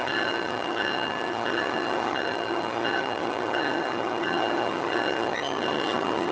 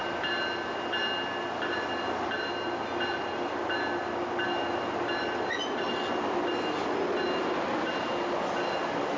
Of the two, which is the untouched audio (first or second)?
second